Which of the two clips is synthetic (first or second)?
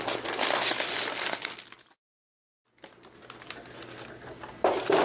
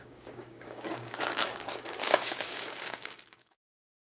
second